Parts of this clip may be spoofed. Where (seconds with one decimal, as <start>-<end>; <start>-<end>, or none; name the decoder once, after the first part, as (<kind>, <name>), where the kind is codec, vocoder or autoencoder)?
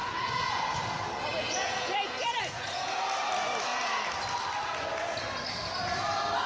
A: 0.0-0.6 (vocoder, Vocos); 1.3-3.0